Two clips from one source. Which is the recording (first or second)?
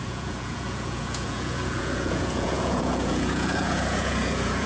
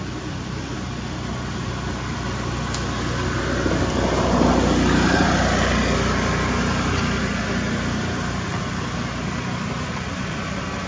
second